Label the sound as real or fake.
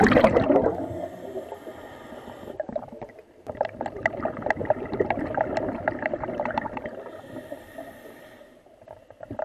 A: fake